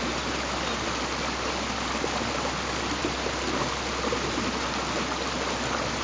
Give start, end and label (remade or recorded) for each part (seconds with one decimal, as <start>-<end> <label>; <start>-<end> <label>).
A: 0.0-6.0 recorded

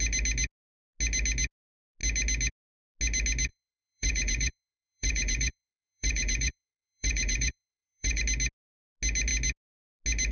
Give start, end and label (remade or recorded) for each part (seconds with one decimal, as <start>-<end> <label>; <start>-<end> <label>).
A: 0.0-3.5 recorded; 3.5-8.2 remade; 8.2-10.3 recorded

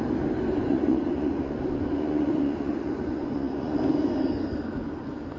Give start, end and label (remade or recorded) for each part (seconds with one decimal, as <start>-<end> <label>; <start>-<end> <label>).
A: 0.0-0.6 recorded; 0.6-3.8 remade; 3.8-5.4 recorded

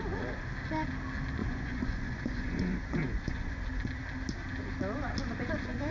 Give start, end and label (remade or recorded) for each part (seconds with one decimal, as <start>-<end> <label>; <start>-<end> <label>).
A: 0.0-1.4 recorded; 1.4-3.6 remade; 3.6-5.9 recorded

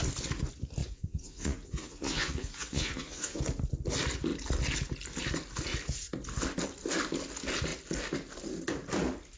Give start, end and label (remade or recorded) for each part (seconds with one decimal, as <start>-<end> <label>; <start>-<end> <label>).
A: 0.0-0.8 recorded; 0.8-3.4 remade; 3.4-9.4 recorded